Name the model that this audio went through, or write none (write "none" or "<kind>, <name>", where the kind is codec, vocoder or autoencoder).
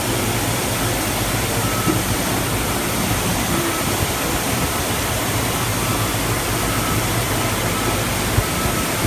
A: vocoder, BigVGAN v2